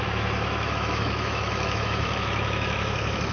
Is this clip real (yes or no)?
no